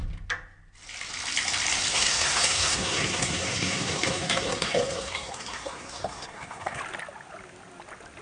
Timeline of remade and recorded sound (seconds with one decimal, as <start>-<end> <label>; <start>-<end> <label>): 0.0-1.9 recorded; 1.9-6.8 remade; 6.8-8.2 recorded